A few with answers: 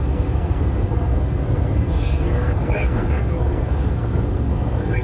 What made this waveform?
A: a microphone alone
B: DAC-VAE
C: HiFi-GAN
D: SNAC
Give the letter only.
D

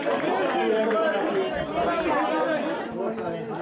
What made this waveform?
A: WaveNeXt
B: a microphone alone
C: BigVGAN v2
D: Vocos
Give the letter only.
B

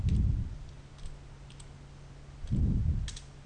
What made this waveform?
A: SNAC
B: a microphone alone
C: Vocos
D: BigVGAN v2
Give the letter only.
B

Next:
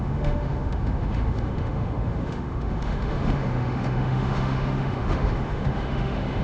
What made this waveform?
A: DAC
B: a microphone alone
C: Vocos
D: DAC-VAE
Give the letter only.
D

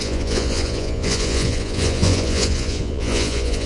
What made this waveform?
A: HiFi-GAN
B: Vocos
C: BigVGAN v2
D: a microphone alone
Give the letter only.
B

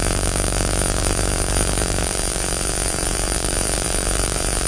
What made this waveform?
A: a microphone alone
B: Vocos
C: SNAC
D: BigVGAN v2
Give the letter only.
D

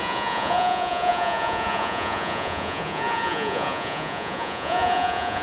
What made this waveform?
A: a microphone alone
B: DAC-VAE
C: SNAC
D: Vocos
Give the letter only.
D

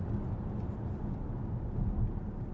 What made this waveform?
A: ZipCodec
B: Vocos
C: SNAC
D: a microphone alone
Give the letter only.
D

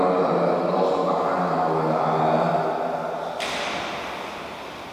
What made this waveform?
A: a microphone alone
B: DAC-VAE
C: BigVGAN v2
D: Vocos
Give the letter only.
A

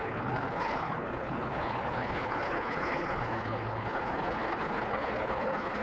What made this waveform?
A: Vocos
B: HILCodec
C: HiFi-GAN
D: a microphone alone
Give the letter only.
B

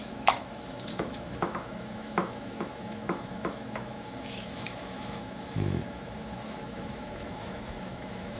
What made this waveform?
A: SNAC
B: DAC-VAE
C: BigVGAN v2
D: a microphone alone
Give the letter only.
B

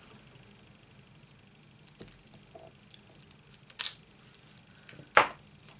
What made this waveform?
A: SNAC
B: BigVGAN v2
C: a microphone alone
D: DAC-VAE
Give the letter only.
C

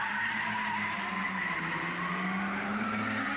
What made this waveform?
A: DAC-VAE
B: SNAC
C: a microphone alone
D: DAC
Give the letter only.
C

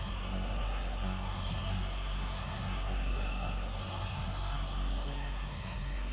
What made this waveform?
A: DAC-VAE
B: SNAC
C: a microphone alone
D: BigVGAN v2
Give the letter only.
B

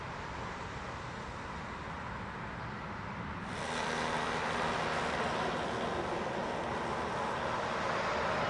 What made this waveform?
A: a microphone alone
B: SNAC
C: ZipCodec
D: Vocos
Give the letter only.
A